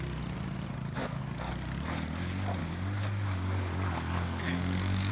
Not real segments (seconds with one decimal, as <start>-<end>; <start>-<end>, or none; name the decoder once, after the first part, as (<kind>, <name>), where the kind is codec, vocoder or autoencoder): 1.0-1.5 (codec, DAC); 2.6-5.1